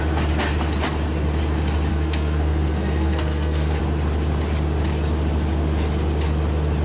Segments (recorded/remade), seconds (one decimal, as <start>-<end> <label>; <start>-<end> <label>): 0.0-1.9 recorded; 1.9-3.8 remade; 3.8-6.8 recorded